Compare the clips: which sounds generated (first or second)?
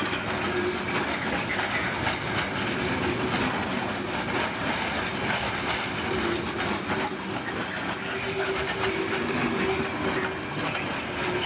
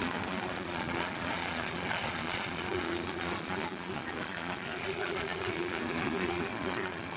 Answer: second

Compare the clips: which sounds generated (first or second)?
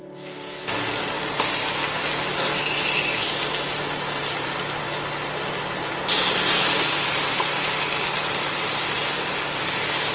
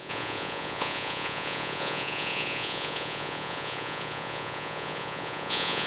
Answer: second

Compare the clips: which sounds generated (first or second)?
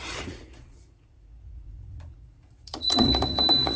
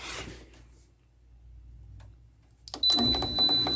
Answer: first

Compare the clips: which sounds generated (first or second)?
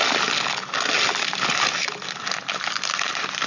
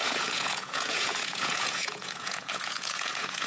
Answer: second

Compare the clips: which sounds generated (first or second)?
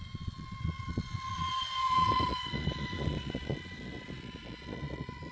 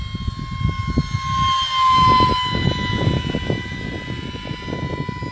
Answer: first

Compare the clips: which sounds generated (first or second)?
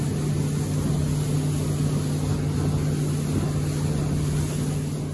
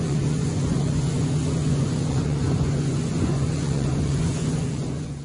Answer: second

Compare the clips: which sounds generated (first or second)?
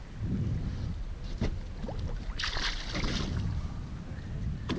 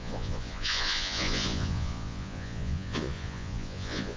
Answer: second